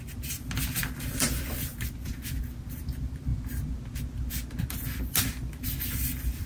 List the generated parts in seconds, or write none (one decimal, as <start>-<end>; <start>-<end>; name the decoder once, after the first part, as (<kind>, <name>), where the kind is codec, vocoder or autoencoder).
0.0-3.3 (vocoder, BigVGAN v2); 4.6-6.5